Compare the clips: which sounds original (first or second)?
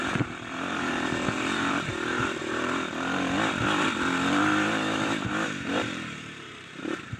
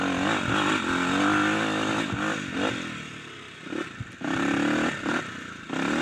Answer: second